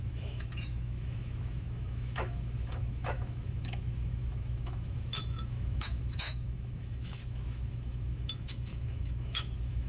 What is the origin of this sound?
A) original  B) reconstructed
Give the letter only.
B